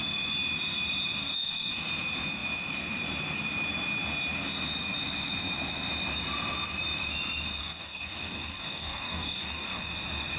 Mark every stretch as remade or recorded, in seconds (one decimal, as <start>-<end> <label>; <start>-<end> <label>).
0.0-1.2 recorded; 1.2-1.7 remade; 1.7-7.6 recorded; 7.6-9.8 remade; 9.8-10.4 recorded